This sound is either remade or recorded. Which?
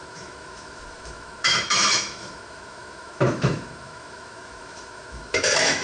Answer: remade